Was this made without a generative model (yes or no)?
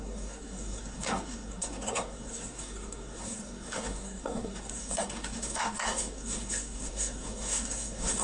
no